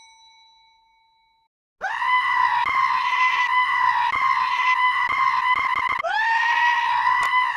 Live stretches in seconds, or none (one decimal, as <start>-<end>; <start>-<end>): 0.0-7.6